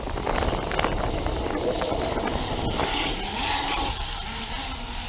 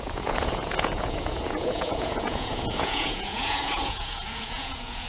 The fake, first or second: second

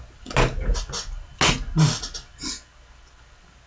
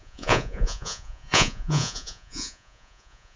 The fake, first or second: second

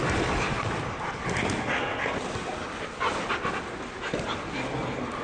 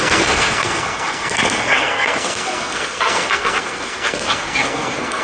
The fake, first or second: second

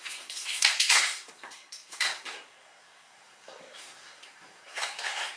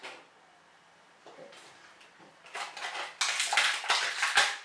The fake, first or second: first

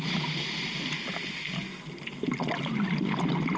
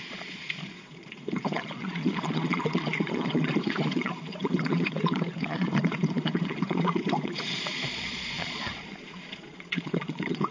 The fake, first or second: second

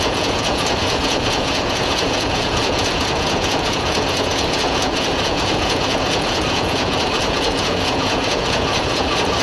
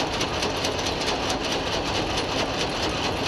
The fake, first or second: first